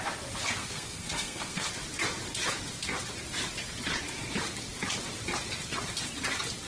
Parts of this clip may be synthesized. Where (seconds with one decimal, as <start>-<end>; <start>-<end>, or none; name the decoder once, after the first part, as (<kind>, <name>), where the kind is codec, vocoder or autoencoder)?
0.6-1.7 (codec, SNAC)